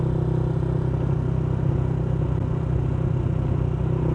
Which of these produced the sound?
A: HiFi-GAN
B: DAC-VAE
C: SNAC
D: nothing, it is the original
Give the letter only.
D